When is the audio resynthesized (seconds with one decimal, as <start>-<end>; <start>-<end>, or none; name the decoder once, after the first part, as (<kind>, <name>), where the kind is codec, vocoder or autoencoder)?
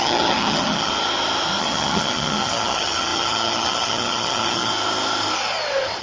0.0-0.9 (vocoder, HiFi-GAN); 1.6-4.7